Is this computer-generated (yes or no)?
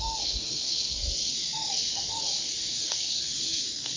yes